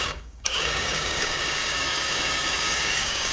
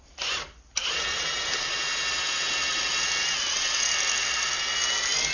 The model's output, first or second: first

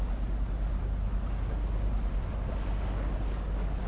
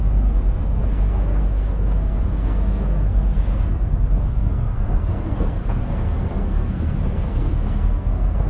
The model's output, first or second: second